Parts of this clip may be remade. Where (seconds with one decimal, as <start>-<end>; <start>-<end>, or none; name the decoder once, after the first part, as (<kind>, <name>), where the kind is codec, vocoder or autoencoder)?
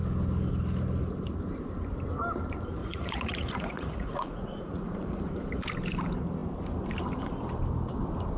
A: 2.8-5.2 (vocoder, Vocos)